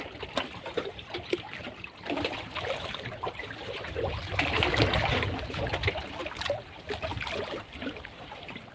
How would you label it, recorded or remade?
recorded